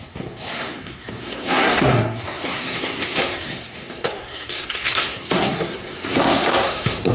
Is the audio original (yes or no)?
no